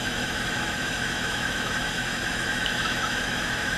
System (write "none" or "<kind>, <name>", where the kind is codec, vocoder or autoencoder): autoencoder, DAC-VAE